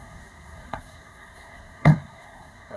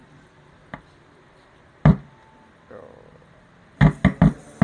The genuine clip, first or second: second